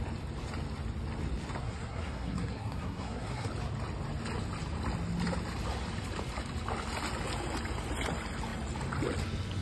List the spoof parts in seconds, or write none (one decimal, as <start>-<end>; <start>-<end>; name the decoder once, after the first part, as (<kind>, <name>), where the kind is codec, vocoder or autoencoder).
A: 1.6-3.5 (codec, SNAC)